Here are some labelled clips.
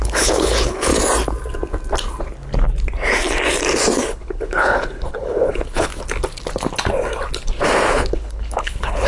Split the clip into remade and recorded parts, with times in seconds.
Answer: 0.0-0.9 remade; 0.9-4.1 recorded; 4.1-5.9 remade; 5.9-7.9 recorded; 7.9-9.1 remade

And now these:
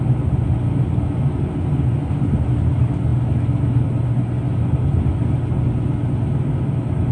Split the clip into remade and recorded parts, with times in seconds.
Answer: 0.0-7.1 recorded

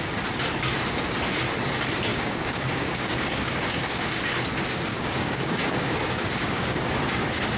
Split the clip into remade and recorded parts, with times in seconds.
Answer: 0.0-2.1 recorded; 2.1-4.2 remade; 4.2-4.9 recorded; 4.9-6.9 remade; 6.9-7.6 recorded

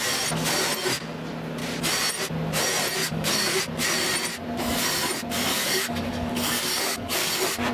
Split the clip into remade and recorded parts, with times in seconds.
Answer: 0.0-3.0 recorded; 3.0-3.6 remade; 3.6-5.5 recorded; 5.5-7.3 remade; 7.3-7.7 recorded